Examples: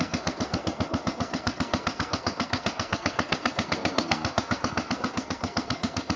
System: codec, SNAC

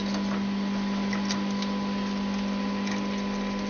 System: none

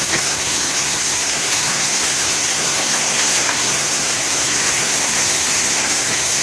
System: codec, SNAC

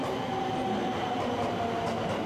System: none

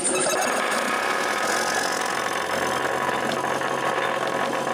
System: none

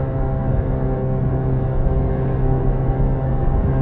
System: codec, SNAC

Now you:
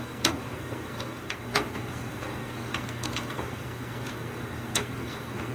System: codec, SNAC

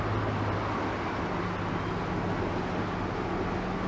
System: none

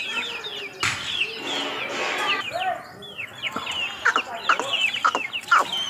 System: none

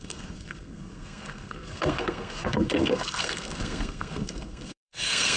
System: codec, SNAC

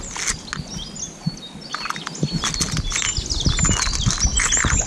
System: none